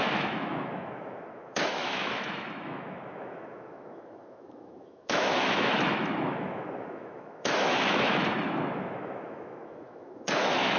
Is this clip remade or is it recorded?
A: remade